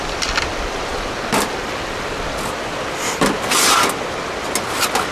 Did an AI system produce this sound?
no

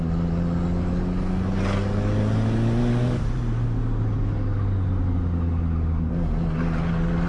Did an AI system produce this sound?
no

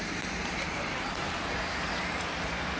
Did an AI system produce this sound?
yes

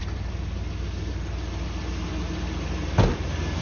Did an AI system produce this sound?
no